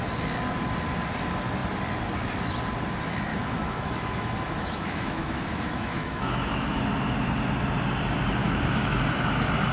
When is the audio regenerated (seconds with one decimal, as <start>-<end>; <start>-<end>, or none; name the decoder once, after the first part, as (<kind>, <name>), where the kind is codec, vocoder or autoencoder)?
3.3-6.8 (autoencoder, DAC-VAE); 8.4-9.0